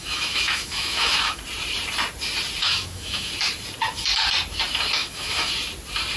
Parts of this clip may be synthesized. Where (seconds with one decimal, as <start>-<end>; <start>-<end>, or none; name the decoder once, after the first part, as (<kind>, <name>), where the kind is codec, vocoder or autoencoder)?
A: 0.0-1.4 (autoencoder, DAC-VAE); 2.6-3.3; 5.0-5.5